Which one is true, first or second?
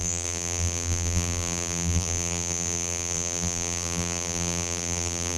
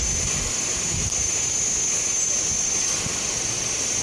second